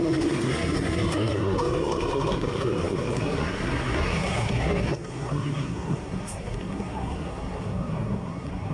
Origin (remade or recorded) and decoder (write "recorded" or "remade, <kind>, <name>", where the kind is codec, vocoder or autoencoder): remade, codec, SNAC